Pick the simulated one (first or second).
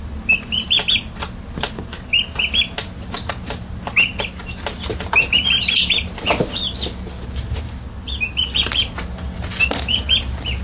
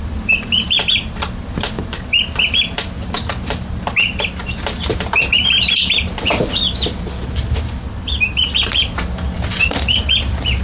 second